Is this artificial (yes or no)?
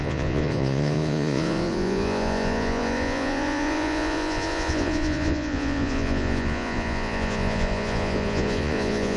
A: yes